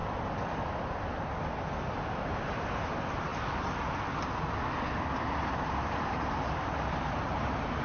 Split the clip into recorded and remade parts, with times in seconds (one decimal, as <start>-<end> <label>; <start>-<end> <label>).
0.0-2.1 recorded; 2.1-3.3 remade; 3.3-5.2 recorded; 5.2-7.8 remade